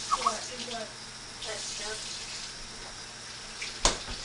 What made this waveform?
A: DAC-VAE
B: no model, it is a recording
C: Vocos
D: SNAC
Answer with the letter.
B